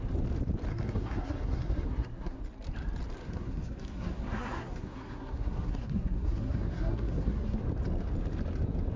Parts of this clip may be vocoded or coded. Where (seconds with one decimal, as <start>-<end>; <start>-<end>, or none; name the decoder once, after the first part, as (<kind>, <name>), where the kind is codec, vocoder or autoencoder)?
0.7-2.4 (codec, SNAC); 3.2-7.6